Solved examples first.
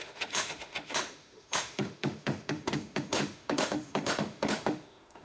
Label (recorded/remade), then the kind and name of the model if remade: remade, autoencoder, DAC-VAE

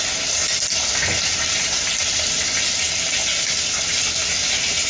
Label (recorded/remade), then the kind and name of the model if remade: recorded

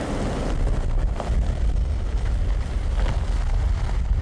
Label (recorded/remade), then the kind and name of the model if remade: recorded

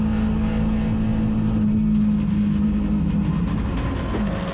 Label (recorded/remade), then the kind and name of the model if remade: recorded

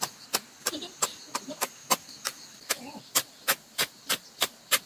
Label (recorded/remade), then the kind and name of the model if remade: recorded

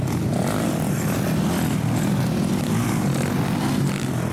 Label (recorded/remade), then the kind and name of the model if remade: recorded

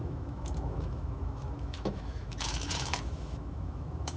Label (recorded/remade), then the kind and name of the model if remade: remade, autoencoder, DAC-VAE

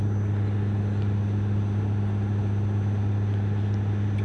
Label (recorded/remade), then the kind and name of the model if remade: recorded